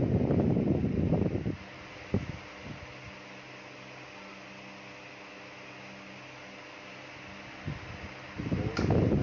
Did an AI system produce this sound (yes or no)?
no